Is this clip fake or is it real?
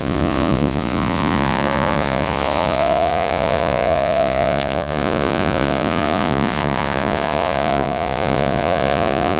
fake